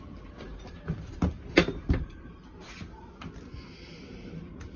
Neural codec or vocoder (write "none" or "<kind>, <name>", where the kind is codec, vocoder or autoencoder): none